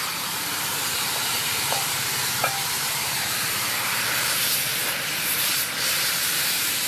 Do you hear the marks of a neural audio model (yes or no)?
yes